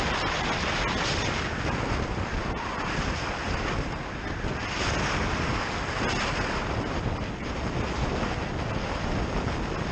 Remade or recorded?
recorded